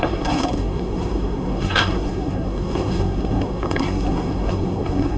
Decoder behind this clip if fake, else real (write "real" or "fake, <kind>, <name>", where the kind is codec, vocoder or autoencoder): fake, codec, SNAC